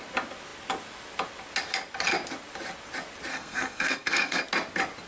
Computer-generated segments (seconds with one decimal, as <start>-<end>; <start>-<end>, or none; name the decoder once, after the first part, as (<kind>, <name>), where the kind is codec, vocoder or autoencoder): 3.3-4.4 (codec, SNAC)